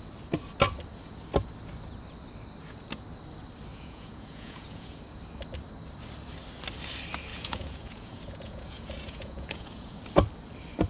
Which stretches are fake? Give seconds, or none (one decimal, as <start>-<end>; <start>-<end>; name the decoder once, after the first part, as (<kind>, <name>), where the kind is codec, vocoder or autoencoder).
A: 3.7-5.0 (vocoder, Vocos); 7.3-10.0